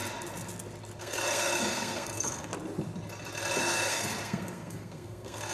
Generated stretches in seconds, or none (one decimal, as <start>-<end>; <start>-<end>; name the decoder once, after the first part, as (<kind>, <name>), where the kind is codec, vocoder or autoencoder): 1.0-2.5 (codec, SNAC); 3.6-5.5